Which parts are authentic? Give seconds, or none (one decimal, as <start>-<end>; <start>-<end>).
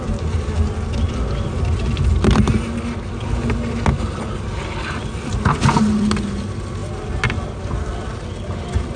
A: 0.0-9.0